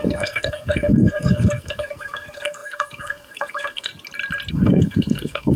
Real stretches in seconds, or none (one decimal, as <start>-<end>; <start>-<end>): 3.9-4.5